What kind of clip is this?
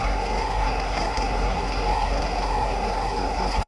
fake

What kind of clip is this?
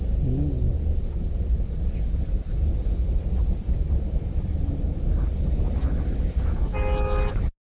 real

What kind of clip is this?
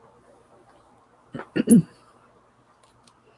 real